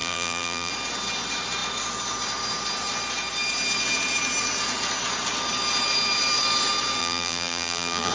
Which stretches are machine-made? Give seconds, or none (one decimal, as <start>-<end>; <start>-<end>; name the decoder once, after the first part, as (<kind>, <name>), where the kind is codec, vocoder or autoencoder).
0.0-0.7 (vocoder, BigVGAN v2); 7.0-8.1